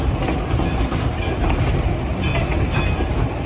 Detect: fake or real real